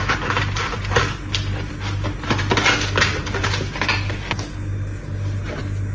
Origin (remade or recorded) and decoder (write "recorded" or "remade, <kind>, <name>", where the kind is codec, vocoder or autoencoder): recorded